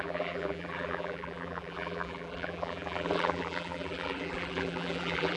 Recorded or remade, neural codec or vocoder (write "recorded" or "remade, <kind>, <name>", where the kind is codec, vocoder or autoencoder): remade, vocoder, BigVGAN v2